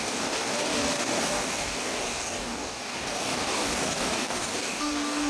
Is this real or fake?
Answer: fake